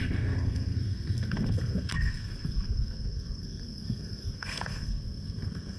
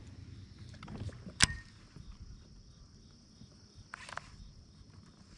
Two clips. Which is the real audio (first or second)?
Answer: second